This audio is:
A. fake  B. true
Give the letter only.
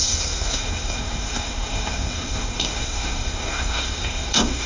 A